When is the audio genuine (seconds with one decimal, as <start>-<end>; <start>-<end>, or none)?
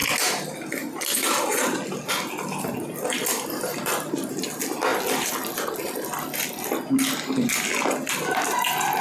0.0-9.0